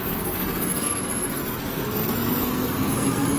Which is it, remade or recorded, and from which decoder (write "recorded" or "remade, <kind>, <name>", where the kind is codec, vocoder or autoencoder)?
remade, codec, SNAC